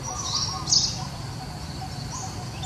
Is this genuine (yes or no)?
yes